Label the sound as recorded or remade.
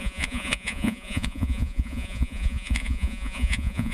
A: remade